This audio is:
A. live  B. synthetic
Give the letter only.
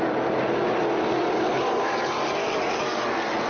A